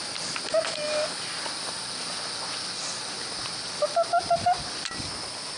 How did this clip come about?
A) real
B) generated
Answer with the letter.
A